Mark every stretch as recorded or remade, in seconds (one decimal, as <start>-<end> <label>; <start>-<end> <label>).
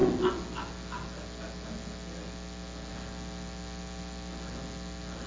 0.0-5.3 recorded